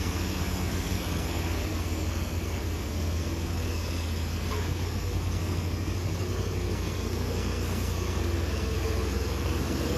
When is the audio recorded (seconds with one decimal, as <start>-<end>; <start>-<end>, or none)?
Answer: none